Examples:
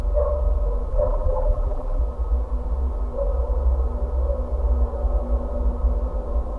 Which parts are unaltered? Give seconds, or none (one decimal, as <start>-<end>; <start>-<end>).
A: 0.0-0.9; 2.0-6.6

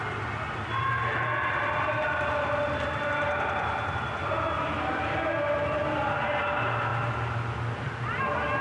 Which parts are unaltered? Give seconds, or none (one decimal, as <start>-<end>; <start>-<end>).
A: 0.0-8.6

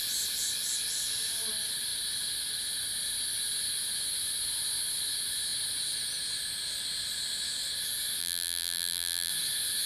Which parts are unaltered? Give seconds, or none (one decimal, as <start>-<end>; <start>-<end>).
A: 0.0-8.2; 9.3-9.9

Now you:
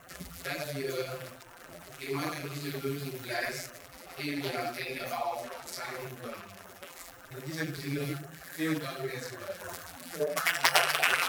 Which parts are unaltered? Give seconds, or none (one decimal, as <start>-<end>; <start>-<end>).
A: none

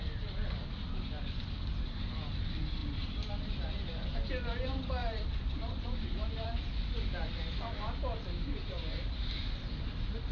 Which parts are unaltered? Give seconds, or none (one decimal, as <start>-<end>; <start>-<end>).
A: 0.0-2.8; 3.3-5.0; 6.7-8.6; 9.6-10.3